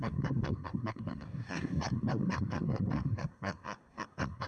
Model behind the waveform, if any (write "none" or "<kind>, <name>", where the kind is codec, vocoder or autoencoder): codec, SNAC